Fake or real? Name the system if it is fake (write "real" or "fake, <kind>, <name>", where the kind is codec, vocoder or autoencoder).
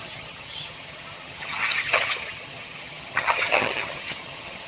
fake, vocoder, HiFi-GAN